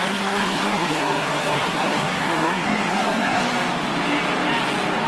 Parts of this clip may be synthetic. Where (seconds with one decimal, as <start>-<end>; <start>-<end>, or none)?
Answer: 0.0-3.4